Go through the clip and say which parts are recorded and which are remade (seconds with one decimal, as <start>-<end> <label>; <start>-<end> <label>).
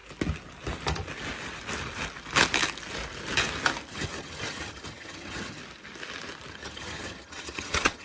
0.0-3.9 recorded; 3.9-5.6 remade; 5.6-6.5 recorded; 6.5-8.0 remade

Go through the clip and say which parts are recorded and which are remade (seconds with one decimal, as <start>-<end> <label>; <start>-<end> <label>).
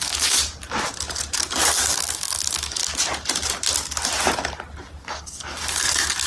0.0-0.4 remade; 0.4-1.8 recorded; 1.8-2.8 remade; 2.8-5.0 recorded; 5.0-6.3 remade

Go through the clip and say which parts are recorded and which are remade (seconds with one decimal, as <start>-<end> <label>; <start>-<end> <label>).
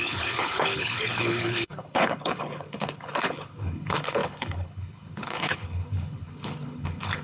0.0-7.2 remade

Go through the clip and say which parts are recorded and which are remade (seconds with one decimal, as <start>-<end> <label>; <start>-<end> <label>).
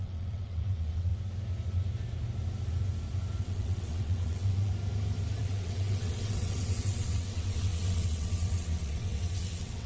0.0-1.1 remade; 1.1-3.4 recorded; 3.4-4.7 remade; 4.7-5.4 recorded; 5.4-9.9 remade